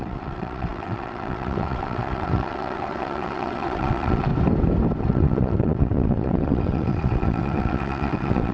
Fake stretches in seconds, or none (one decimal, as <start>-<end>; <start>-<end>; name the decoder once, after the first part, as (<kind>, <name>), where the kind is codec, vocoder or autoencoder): 0.0-4.3 (vocoder, WaveNeXt); 5.0-8.5